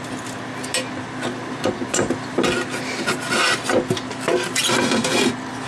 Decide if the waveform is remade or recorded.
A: recorded